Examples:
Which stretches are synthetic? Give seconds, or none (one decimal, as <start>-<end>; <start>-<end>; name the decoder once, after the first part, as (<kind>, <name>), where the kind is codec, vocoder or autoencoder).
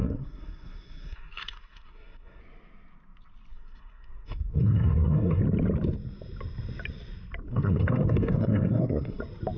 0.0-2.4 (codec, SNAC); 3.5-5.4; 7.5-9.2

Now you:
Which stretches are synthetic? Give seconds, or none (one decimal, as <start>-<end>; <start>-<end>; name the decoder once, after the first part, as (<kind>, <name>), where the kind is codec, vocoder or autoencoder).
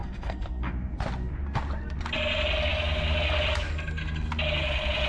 0.0-0.7 (codec, SNAC)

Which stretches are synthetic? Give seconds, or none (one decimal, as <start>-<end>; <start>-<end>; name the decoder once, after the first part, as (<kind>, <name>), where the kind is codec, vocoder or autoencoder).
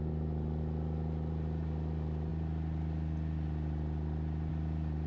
none